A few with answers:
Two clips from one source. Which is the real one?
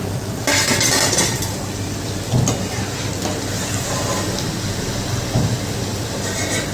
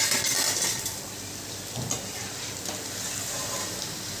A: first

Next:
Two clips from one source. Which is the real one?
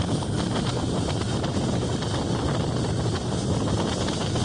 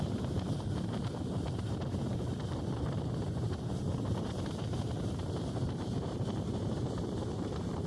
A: first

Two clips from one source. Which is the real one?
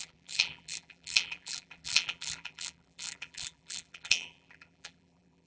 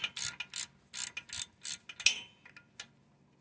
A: second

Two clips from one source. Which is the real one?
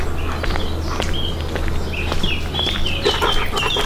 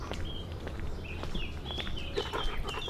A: first